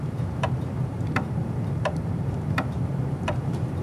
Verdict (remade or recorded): remade